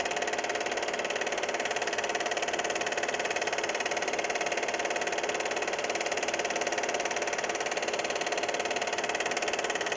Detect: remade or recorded recorded